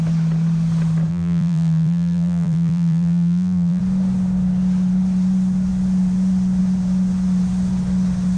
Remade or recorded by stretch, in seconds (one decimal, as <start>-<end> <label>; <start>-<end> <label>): 0.0-1.1 recorded; 1.1-3.8 remade; 3.8-8.4 recorded